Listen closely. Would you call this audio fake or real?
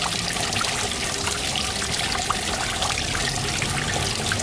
real